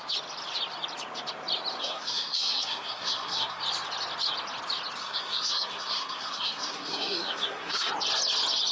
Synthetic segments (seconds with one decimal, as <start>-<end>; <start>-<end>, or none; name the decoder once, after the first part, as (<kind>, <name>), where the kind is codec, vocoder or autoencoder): 1.8-3.6 (codec, SNAC); 5.0-7.9